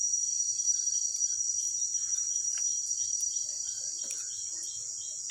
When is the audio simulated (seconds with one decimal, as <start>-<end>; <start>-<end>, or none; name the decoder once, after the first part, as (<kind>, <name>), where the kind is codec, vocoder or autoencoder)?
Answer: 0.6-1.3 (vocoder, BigVGAN v2); 1.9-4.0